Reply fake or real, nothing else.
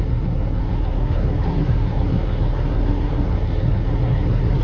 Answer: fake